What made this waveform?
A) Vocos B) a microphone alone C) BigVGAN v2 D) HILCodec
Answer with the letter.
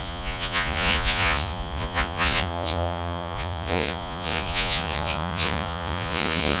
A